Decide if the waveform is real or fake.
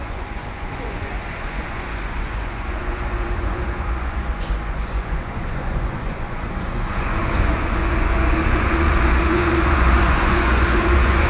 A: fake